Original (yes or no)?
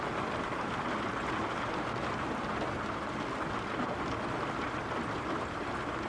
yes